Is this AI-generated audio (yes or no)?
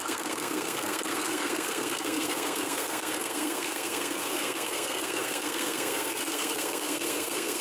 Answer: yes